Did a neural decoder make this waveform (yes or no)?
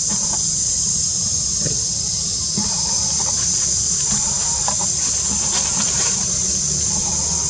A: yes